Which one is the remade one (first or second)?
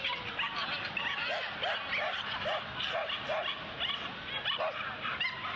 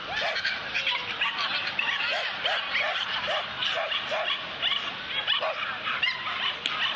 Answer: second